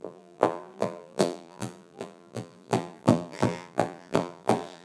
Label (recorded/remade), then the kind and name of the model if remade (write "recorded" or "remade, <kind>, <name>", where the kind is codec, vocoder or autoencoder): remade, vocoder, BigVGAN v2